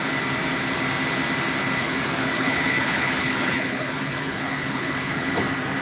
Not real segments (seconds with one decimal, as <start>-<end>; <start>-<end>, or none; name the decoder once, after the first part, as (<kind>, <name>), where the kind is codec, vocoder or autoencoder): 1.8-5.3 (codec, HILCodec)